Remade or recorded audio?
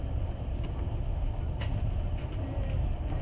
recorded